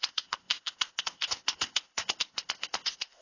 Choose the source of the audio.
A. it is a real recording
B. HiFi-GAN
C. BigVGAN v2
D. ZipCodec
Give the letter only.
D